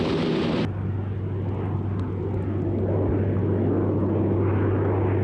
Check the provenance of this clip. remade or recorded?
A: recorded